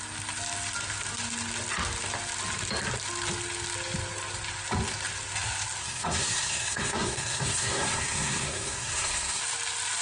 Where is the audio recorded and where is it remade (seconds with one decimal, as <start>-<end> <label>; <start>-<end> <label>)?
0.0-5.8 recorded; 5.8-9.4 remade; 9.4-10.0 recorded